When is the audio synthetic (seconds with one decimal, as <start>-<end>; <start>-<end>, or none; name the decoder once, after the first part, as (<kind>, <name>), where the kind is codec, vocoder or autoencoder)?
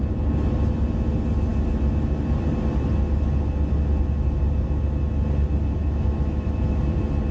5.8-6.8 (autoencoder, DAC-VAE)